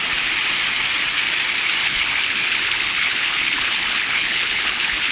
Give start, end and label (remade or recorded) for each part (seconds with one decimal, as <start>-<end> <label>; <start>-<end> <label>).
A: 0.0-1.8 recorded; 1.8-5.1 remade